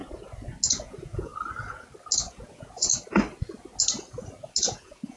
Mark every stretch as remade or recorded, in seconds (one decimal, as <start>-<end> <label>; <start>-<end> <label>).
0.0-0.8 recorded; 0.8-1.3 remade; 1.3-2.2 recorded; 2.2-2.9 remade; 2.9-4.6 recorded; 4.6-5.2 remade